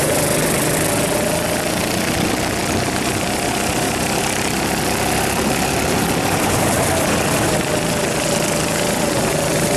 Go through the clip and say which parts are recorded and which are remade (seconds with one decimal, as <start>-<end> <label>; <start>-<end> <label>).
0.0-9.8 recorded